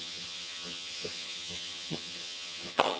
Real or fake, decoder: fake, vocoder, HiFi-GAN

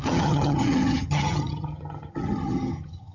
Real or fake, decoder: fake, vocoder, HiFi-GAN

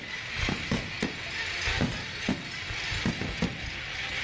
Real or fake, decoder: real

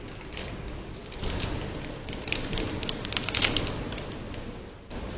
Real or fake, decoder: real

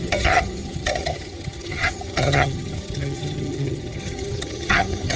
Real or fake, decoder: fake, vocoder, HiFi-GAN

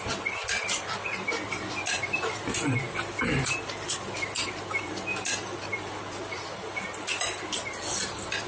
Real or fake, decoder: real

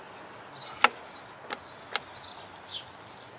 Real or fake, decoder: real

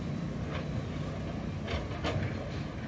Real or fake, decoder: real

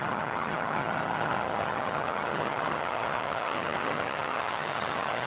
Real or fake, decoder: fake, vocoder, HiFi-GAN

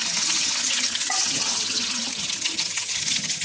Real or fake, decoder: fake, vocoder, HiFi-GAN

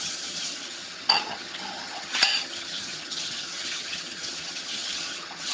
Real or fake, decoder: fake, vocoder, HiFi-GAN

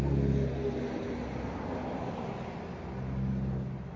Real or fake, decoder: real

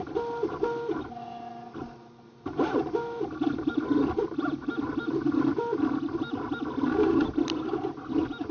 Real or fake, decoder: real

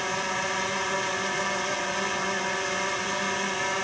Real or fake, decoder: real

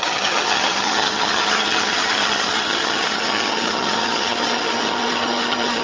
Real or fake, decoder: fake, vocoder, HiFi-GAN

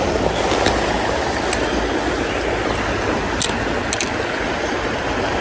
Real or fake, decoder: real